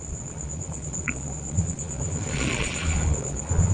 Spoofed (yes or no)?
yes